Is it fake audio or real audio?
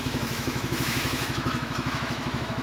fake